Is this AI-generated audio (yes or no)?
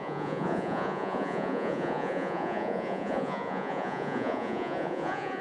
yes